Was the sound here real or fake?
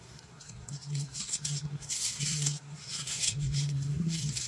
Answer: fake